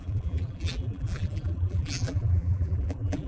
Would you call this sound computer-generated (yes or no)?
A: yes